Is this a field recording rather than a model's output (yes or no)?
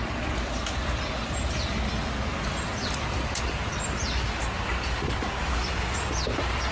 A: yes